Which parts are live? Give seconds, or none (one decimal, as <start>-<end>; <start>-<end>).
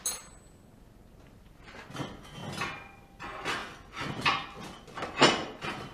0.0-5.9